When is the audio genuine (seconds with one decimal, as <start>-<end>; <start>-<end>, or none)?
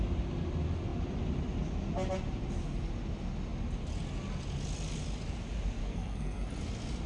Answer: 0.0-5.8; 6.5-7.1